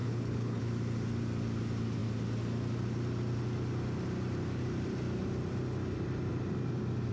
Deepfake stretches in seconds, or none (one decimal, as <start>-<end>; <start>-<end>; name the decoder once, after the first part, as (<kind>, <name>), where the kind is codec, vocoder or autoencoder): 0.0-0.6 (codec, HILCodec)